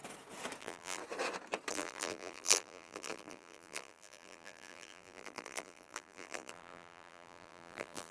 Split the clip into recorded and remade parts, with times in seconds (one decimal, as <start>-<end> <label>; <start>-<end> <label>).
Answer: 0.0-0.6 recorded; 0.6-1.0 remade; 1.0-1.7 recorded; 1.7-8.1 remade